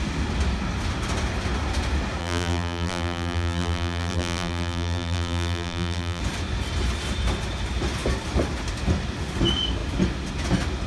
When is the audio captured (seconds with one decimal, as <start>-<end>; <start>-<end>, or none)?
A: 0.0-2.2; 6.2-10.9